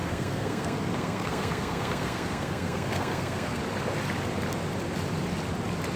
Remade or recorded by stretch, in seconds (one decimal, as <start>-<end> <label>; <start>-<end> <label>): 0.0-3.6 remade; 3.6-6.0 recorded